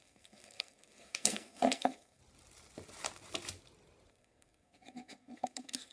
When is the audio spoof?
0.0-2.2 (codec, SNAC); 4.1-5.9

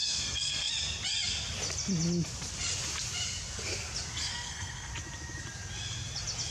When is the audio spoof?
0.0-0.7 (codec, SNAC); 4.3-4.9

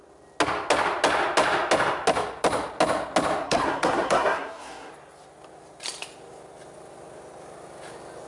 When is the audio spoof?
3.4-4.9 (codec, SNAC)

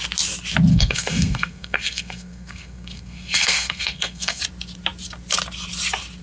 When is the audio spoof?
0.7-4.4 (codec, SNAC)